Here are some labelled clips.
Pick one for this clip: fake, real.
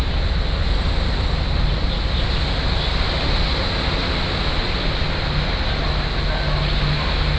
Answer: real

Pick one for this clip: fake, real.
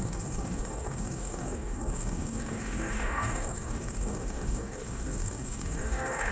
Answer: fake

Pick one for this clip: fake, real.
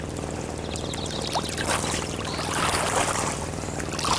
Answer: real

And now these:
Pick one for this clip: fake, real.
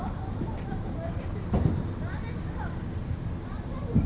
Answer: real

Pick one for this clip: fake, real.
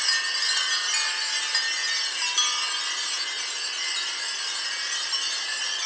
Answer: real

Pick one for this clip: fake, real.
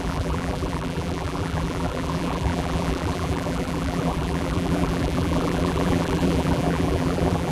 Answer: fake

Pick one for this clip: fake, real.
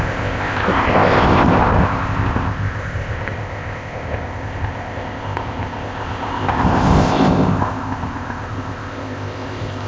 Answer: fake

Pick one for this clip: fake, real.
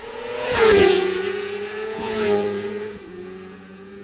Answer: fake